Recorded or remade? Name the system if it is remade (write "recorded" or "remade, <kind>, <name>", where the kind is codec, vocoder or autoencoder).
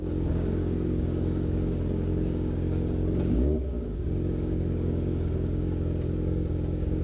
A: remade, codec, DAC